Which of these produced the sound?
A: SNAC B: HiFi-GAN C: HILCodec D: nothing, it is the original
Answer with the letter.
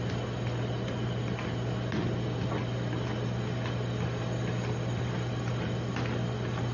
D